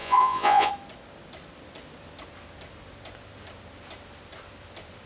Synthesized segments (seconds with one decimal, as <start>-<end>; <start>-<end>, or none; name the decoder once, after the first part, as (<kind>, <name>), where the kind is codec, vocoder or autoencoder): 0.0-0.7 (vocoder, Vocos)